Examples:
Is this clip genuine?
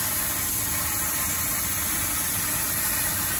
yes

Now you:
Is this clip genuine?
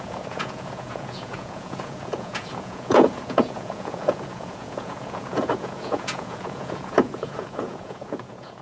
no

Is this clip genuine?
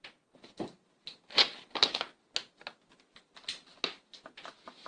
yes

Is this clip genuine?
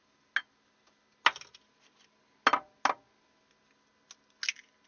yes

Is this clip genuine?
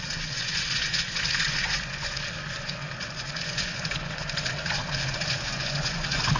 no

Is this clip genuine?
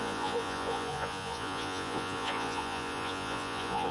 no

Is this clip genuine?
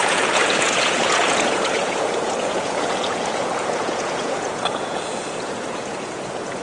no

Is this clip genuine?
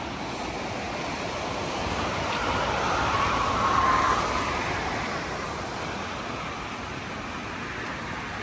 yes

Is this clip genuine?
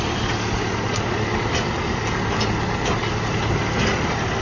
yes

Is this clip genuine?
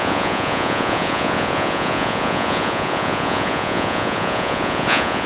no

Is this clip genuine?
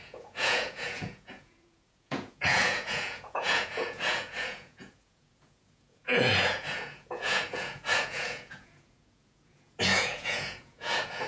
no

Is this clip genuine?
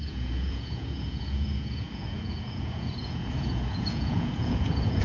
no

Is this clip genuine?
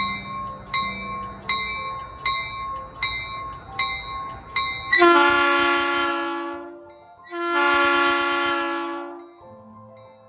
yes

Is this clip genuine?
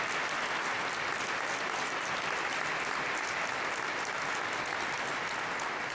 yes